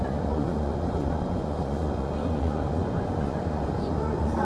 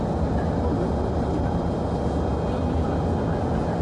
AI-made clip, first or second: first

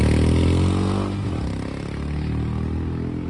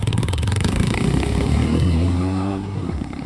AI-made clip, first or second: second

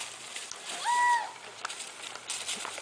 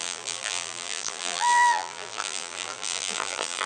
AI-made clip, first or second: second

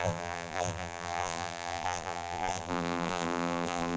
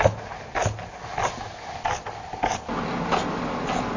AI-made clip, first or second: first